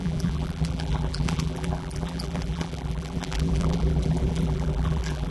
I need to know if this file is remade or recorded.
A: remade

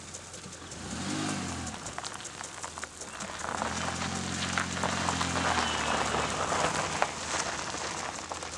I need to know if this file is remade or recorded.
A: recorded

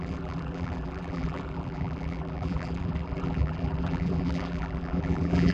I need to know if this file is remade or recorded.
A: remade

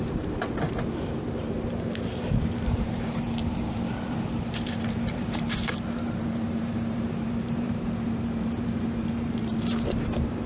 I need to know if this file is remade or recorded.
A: remade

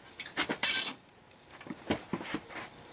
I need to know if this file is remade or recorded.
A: remade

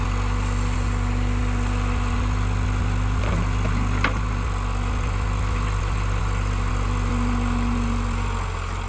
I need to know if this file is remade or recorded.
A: recorded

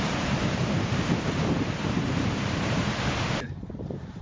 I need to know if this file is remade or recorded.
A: remade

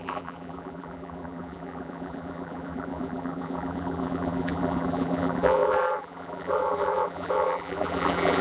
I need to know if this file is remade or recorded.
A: remade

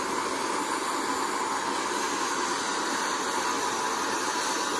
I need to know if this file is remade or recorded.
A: recorded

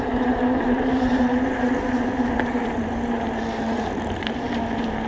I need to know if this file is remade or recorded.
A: remade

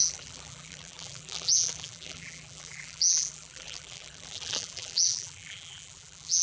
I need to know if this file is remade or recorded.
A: remade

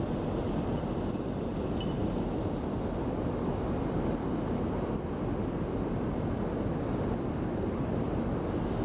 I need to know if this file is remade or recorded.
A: recorded